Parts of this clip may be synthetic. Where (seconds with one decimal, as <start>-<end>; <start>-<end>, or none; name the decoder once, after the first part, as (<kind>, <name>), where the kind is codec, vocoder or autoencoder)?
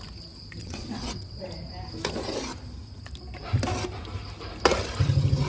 0.6-1.5 (vocoder, WaveNeXt)